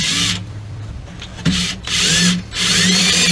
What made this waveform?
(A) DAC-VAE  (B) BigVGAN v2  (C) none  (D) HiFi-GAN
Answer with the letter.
B